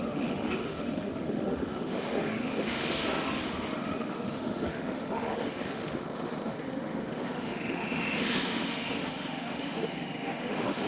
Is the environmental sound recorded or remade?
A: remade